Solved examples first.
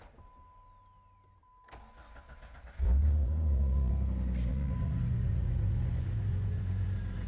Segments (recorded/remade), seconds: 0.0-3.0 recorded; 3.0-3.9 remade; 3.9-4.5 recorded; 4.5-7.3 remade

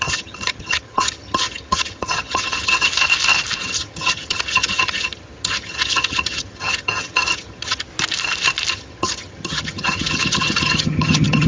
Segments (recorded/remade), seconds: 0.0-2.9 remade; 2.9-3.6 recorded; 3.6-7.9 remade; 7.9-8.7 recorded; 8.7-11.5 remade

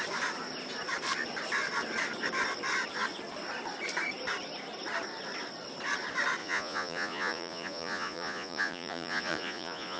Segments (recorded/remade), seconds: 0.0-6.4 recorded; 6.4-10.0 remade

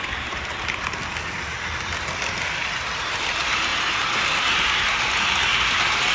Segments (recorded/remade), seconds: 0.0-0.9 remade; 0.9-2.7 recorded; 2.7-6.1 remade

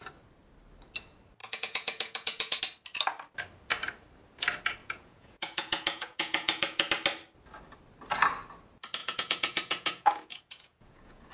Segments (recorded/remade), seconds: 0.0-1.4 recorded; 1.4-2.6 remade; 2.6-4.8 recorded; 4.8-6.9 remade; 6.9-9.0 recorded; 9.0-11.3 remade

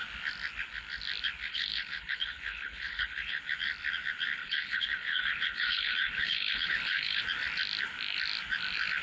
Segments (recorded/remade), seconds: 0.0-1.5 recorded; 1.5-3.4 remade; 3.4-4.4 recorded; 4.4-7.2 remade; 7.2-9.0 recorded

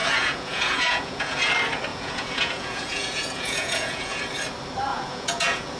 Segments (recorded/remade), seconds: 0.0-1.5 remade; 1.5-1.9 recorded; 1.9-4.2 remade; 4.2-4.9 recorded; 4.9-5.8 remade

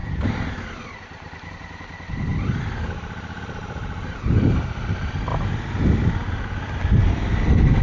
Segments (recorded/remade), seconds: 0.0-7.8 recorded